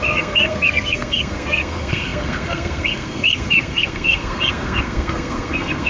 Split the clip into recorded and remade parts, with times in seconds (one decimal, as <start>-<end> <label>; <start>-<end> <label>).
0.0-5.9 remade